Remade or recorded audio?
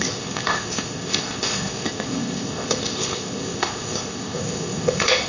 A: remade